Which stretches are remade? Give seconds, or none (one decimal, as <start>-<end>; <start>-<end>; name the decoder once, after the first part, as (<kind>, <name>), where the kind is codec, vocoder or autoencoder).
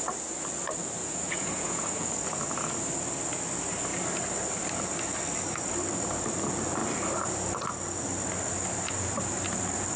1.0-2.1 (vocoder, Vocos)